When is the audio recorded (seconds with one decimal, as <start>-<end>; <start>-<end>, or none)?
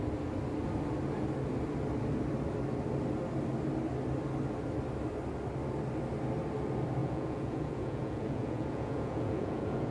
0.0-7.0